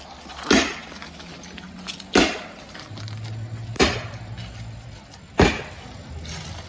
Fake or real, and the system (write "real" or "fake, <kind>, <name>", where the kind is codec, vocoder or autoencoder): real